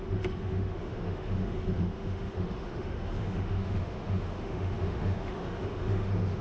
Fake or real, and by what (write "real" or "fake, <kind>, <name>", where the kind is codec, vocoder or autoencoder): fake, autoencoder, DAC-VAE